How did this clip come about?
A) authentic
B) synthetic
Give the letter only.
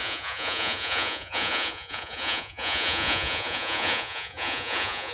B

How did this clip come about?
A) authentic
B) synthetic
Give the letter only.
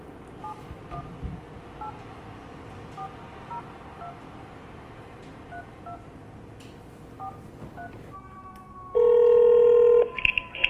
A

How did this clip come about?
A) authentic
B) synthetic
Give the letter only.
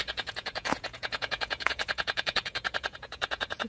B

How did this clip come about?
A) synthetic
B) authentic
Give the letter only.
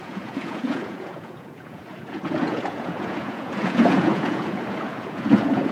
A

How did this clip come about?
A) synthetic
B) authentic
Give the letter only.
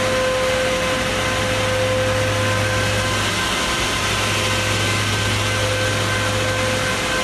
B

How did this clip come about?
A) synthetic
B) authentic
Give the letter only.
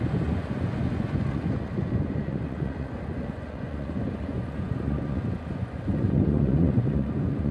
A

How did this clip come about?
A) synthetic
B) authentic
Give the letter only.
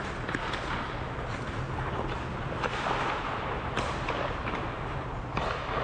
B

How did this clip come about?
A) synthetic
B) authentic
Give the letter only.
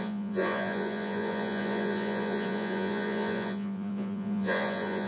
A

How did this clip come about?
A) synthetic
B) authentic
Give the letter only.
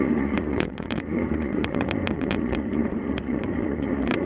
A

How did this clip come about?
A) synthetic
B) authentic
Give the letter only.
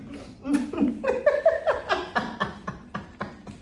B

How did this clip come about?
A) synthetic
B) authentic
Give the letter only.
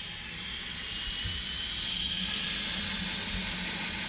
B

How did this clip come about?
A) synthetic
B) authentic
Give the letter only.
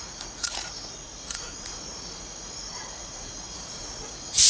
A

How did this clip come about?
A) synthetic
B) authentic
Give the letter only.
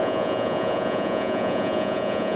A